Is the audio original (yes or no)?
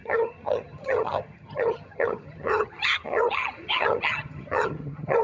no